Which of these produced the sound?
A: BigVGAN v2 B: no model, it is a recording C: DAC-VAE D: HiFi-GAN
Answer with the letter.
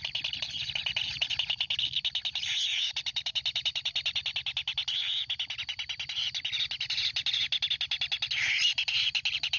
B